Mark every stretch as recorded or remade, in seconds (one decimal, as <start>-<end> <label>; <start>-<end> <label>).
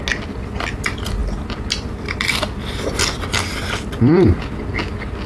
0.0-5.3 recorded